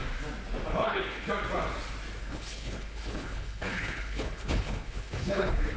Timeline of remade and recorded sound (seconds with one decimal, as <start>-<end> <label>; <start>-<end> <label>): 0.0-0.7 recorded; 0.7-1.3 remade; 1.3-2.2 recorded; 2.2-5.8 remade